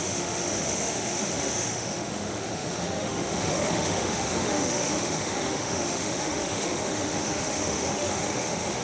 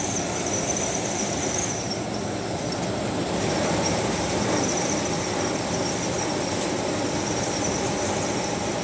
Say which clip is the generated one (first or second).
first